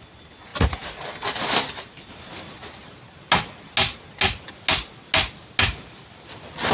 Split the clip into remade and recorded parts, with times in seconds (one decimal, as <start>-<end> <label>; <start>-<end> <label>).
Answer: 0.0-6.7 recorded